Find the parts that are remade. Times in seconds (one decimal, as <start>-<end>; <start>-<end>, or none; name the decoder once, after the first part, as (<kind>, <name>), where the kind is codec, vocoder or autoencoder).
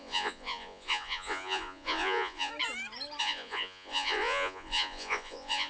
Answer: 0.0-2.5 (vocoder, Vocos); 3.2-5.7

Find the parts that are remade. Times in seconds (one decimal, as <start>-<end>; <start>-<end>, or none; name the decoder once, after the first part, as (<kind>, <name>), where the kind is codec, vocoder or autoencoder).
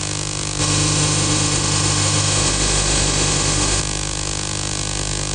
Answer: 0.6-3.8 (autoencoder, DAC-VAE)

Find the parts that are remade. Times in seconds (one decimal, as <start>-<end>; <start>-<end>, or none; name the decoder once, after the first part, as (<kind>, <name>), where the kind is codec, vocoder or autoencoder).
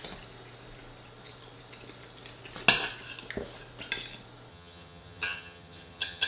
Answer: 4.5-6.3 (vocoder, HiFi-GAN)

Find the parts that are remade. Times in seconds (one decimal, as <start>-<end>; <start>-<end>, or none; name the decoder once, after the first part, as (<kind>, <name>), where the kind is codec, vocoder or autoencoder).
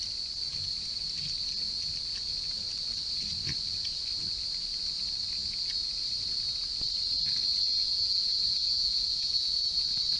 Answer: 8.6-9.5 (vocoder, Vocos)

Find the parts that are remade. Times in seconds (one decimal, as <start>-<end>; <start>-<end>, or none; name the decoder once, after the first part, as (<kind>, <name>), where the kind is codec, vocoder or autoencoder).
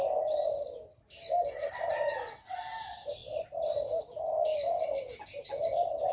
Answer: none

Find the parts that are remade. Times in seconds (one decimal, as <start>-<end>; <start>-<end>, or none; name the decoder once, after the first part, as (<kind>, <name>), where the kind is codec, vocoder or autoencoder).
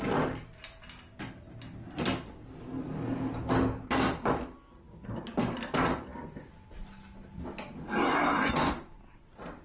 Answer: none